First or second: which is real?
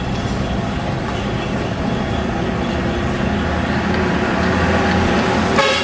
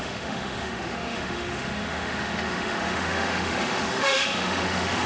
first